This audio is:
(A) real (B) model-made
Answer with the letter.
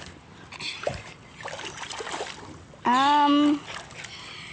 A